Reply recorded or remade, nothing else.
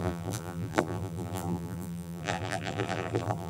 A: remade